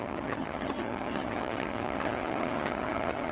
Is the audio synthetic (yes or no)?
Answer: yes